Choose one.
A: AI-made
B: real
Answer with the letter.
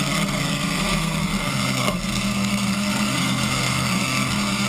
A